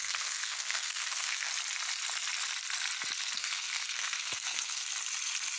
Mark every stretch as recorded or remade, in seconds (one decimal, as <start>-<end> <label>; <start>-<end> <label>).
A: 0.0-1.5 remade; 1.5-3.2 recorded; 3.2-4.8 remade; 4.8-5.6 recorded